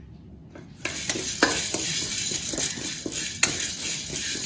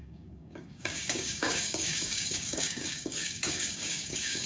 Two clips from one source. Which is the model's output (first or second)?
second